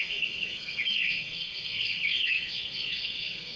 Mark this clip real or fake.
fake